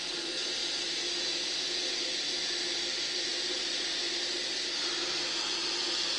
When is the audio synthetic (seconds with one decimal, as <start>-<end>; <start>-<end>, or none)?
none